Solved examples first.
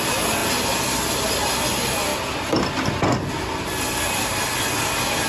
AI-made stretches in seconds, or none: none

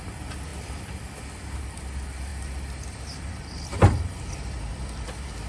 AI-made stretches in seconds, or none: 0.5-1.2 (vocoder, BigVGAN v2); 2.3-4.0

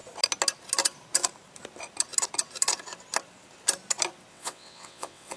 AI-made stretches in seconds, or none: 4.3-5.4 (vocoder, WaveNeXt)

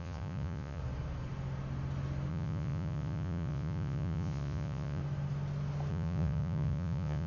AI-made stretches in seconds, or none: 0.0-0.8 (vocoder, Vocos); 2.3-5.0; 5.9-7.3

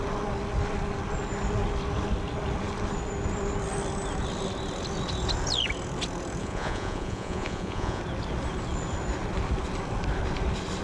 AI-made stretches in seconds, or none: 6.4-8.0 (vocoder, Vocos)